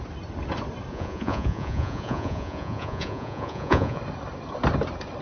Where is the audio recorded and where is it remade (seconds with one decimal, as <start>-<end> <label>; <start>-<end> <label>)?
0.0-0.9 recorded; 0.9-4.0 remade; 4.0-5.2 recorded